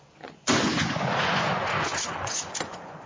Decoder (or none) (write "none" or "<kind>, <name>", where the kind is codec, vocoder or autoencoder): vocoder, Vocos